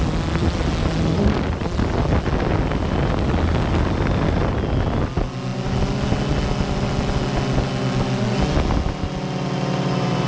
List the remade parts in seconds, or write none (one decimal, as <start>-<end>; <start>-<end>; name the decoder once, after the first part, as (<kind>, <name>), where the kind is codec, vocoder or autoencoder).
none